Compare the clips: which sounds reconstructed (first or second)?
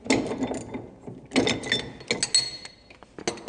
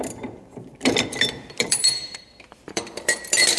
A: second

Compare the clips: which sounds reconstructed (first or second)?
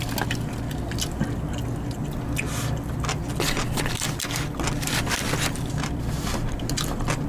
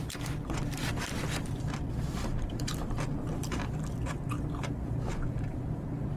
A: second